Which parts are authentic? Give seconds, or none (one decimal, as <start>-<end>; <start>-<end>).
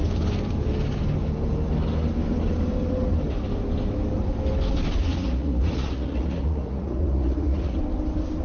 0.0-5.1; 7.8-8.4